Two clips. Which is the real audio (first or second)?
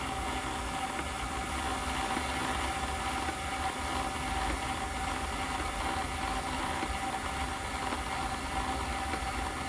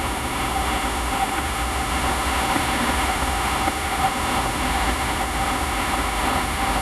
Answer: first